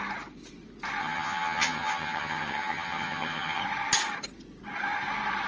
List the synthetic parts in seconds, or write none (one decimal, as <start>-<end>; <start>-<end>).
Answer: 1.0-3.6